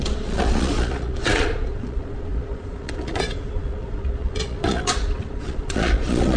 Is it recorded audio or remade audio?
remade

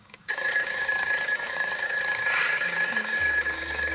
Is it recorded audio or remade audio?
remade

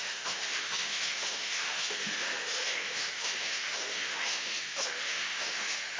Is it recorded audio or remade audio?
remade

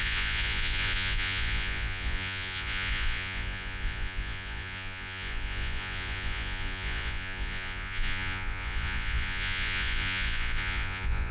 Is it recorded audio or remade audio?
remade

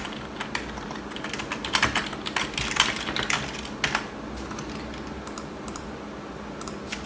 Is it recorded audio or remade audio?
recorded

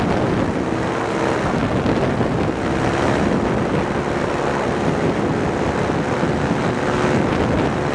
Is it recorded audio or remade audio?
recorded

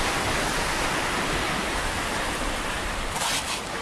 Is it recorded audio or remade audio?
recorded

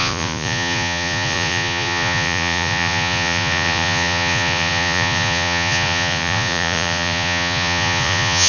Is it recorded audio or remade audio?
remade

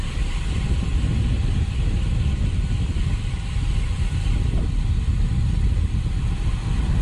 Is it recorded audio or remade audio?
recorded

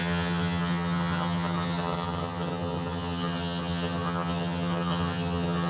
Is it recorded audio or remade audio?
remade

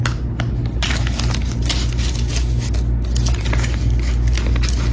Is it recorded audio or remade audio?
recorded